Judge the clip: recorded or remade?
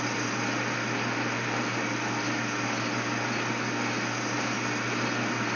recorded